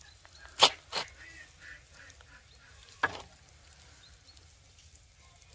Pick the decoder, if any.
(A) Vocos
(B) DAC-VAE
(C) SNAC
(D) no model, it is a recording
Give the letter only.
D